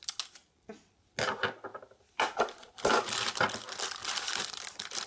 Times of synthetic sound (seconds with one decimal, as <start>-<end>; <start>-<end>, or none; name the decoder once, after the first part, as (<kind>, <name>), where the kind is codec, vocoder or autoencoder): 1.7-2.8 (vocoder, BigVGAN v2); 4.0-5.1